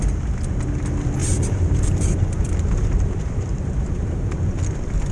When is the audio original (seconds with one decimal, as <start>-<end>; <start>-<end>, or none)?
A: 0.0-1.2; 4.3-5.1